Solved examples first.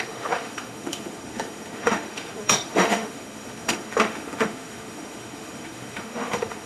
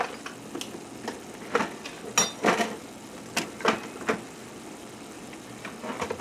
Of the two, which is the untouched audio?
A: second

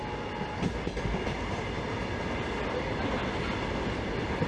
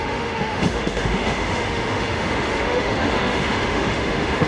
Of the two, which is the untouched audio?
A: first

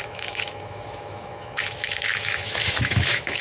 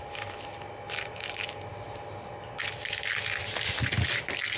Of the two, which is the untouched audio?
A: second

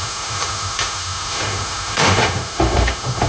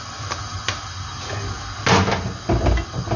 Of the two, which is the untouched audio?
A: second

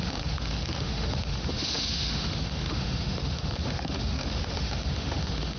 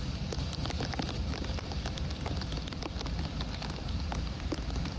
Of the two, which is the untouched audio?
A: second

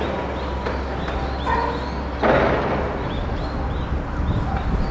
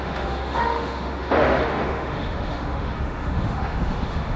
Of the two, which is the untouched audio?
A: first